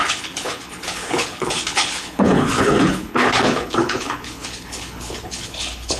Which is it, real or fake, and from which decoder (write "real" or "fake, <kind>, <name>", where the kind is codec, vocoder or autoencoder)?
fake, codec, HILCodec